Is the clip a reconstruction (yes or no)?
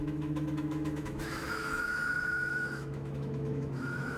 yes